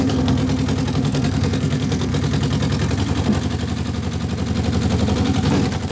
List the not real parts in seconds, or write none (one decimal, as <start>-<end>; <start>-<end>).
0.0-0.4; 0.9-2.1